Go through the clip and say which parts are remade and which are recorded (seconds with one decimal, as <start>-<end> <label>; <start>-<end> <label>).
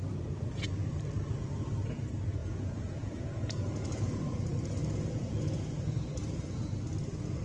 0.0-2.4 recorded; 2.4-4.2 remade; 4.2-4.8 recorded; 4.8-5.8 remade; 5.8-7.4 recorded